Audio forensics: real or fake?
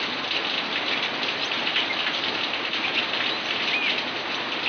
real